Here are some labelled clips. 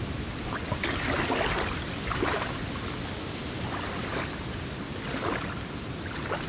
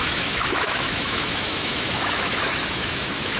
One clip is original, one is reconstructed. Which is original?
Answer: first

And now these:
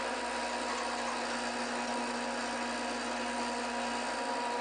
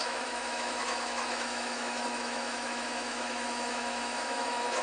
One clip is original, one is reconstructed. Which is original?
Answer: first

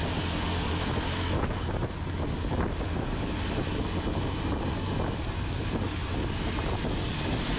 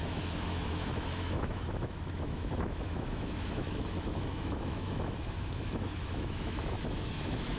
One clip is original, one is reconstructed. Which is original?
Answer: first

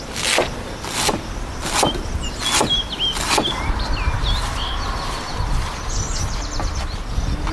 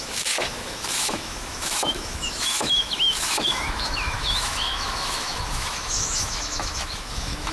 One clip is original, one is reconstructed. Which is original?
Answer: first